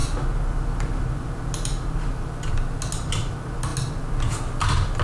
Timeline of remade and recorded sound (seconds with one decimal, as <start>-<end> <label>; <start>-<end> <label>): 0.0-5.0 recorded